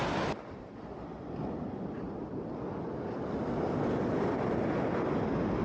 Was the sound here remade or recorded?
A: recorded